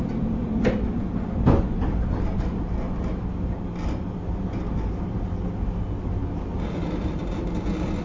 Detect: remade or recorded recorded